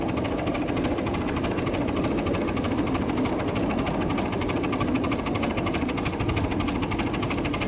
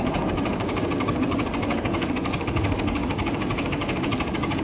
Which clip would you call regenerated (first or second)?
second